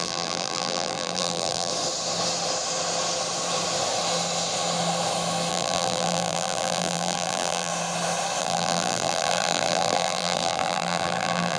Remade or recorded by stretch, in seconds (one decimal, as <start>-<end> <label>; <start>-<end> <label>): 0.0-1.7 remade; 1.7-5.5 recorded; 5.5-7.7 remade; 7.7-8.4 recorded; 8.4-11.6 remade